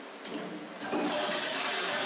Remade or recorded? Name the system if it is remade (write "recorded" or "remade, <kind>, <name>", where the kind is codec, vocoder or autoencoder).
recorded